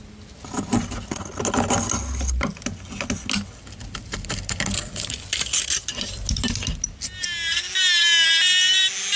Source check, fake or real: real